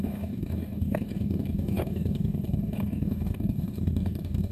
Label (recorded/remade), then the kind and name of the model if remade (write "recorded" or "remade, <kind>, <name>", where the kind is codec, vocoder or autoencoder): remade, codec, DAC